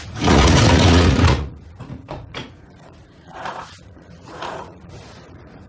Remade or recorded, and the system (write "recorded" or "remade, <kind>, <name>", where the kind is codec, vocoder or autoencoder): remade, vocoder, Vocos